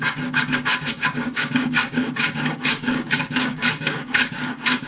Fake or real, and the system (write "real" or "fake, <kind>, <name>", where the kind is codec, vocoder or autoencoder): fake, codec, DAC